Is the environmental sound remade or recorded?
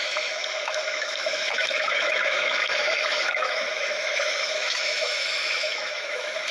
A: remade